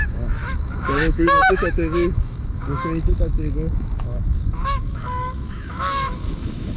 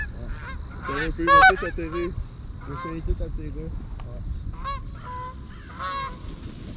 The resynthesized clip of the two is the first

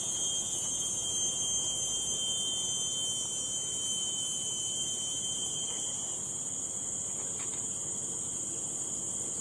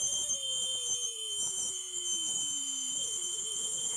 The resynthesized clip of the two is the second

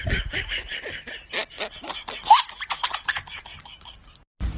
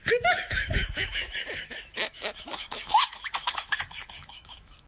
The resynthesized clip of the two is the second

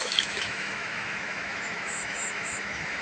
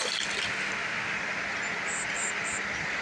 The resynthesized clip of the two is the first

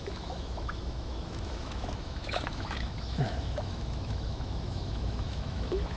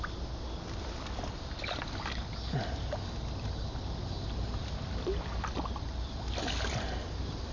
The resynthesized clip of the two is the first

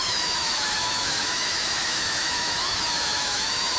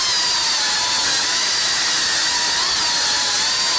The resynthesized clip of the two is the first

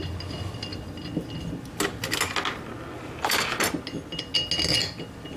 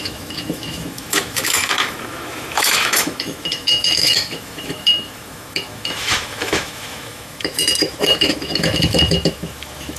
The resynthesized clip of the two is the second